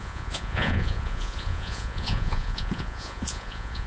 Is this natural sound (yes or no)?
no